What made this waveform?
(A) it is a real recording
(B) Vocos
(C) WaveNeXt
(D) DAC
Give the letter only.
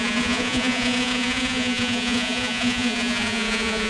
B